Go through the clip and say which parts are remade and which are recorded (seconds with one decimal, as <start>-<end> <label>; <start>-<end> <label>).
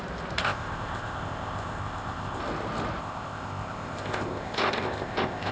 0.0-0.4 recorded; 0.4-2.4 remade; 2.4-3.0 recorded; 3.0-5.5 remade